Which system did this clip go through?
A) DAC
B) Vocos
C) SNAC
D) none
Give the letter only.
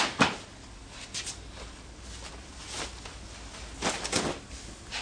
D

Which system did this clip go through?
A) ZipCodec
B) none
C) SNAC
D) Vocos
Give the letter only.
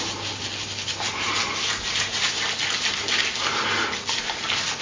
B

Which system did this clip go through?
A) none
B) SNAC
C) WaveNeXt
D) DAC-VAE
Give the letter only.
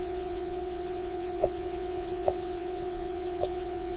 C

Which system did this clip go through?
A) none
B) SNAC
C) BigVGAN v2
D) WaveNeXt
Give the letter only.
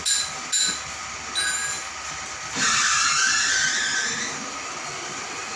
A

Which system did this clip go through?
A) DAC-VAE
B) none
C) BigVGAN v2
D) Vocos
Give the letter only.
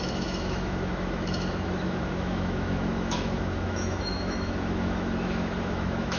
A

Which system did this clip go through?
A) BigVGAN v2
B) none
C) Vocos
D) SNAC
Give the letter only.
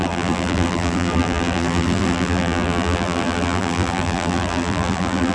A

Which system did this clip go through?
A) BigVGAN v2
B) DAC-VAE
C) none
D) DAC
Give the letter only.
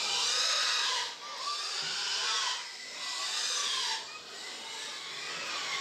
C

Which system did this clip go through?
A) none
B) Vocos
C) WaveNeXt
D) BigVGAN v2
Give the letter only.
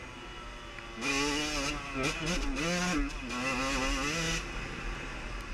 A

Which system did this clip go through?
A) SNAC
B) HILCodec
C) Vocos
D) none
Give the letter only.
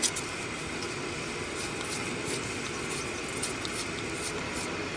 D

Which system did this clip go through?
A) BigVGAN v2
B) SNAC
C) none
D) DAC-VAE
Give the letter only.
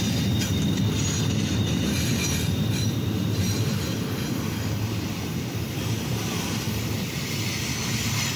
A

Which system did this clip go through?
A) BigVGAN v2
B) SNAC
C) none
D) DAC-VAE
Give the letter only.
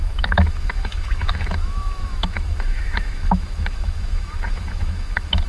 D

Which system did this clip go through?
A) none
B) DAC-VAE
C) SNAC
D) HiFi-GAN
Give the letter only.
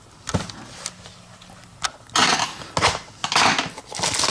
A